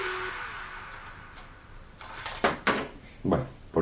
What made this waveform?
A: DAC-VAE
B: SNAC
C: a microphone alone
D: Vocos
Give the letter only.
C